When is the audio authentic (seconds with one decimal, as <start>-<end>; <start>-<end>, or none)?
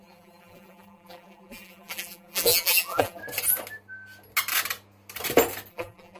3.2-5.7